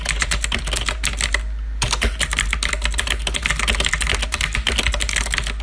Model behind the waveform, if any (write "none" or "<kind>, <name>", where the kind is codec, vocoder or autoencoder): none